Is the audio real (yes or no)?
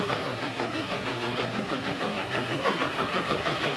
no